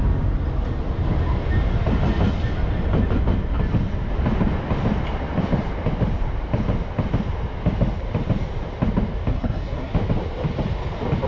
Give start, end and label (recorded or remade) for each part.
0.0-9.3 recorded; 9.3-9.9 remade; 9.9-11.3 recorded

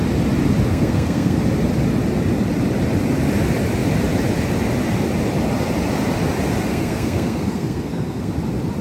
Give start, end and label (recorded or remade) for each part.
0.0-0.7 recorded; 0.7-1.4 remade; 1.4-6.7 recorded; 6.7-8.3 remade; 8.3-8.8 recorded

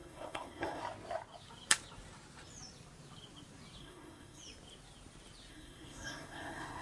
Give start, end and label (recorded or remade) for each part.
0.0-0.8 remade; 0.8-3.8 recorded; 3.8-4.4 remade; 4.4-5.5 recorded; 5.5-6.8 remade

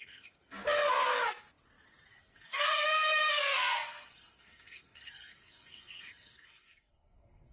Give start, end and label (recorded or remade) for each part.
0.0-0.6 remade; 0.6-2.1 recorded; 2.1-7.5 remade

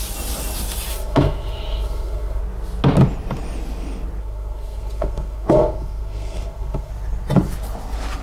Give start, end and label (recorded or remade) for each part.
0.0-0.9 recorded; 0.9-2.4 remade; 2.4-4.2 recorded; 4.2-6.9 remade; 6.9-8.2 recorded

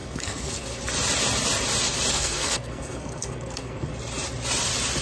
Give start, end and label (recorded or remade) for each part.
0.0-0.8 remade; 0.8-2.1 recorded; 2.1-3.9 remade; 3.9-5.0 recorded